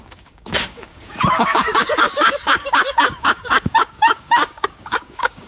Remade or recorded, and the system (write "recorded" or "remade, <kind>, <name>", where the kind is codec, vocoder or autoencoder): remade, codec, DAC